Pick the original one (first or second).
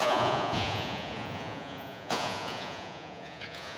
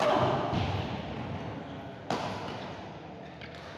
second